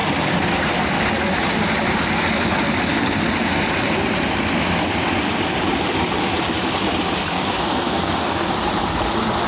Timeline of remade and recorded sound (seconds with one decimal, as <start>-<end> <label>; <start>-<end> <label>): 0.0-7.2 recorded; 7.2-8.5 remade; 8.5-9.5 recorded